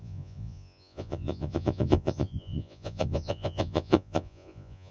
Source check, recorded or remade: remade